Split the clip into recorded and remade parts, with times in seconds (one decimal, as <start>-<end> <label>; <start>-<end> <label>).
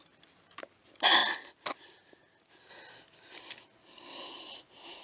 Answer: 0.0-5.0 recorded